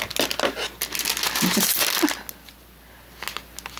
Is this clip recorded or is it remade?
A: recorded